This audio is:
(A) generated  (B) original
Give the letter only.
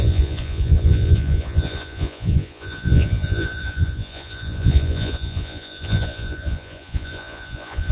A